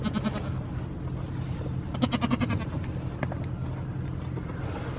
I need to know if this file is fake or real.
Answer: real